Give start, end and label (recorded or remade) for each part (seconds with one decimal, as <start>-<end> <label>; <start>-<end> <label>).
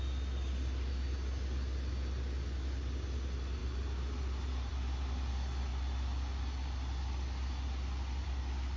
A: 0.0-8.8 recorded